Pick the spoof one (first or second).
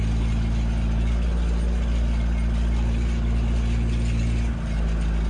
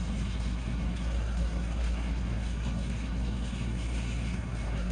second